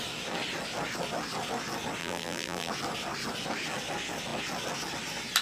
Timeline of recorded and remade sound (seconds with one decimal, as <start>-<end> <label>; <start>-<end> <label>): 0.0-2.0 recorded; 2.0-2.7 remade; 2.7-5.4 recorded